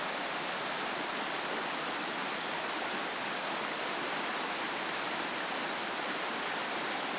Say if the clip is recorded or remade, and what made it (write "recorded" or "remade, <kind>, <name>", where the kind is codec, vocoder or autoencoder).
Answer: remade, vocoder, BigVGAN v2